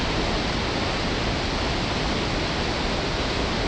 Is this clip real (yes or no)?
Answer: yes